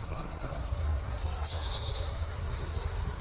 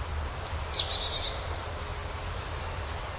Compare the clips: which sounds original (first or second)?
second